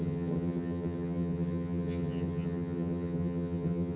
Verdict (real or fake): fake